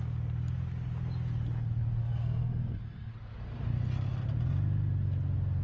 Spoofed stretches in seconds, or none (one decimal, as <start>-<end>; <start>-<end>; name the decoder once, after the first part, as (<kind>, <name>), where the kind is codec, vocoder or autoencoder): 2.0-3.1 (codec, SNAC)